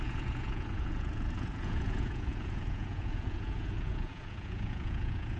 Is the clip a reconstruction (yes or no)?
yes